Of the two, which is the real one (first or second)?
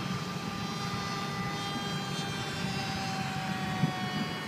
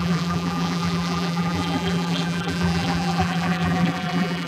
first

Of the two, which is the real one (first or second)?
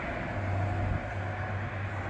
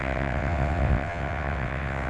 first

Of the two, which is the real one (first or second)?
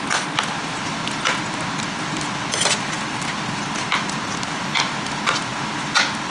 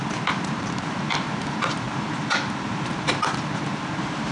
first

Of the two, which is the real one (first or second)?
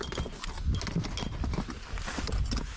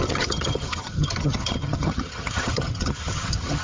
first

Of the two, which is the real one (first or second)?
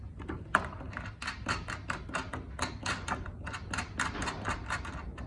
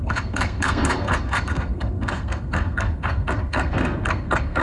first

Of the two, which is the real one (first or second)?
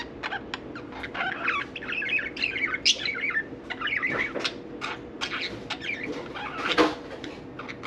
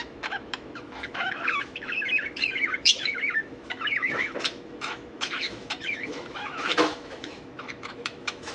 first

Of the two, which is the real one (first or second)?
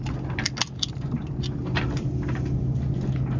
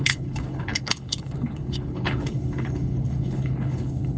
first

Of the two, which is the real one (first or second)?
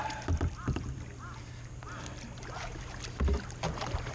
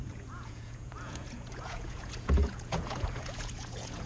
first